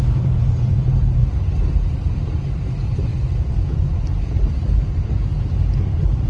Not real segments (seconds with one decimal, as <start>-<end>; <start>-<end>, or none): 0.0-3.1; 3.9-6.3